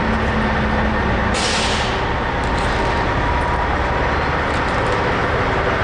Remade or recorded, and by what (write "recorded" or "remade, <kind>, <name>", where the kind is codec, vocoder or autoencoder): recorded